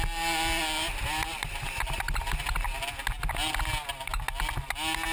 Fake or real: real